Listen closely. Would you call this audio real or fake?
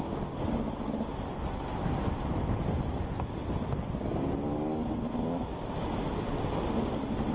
real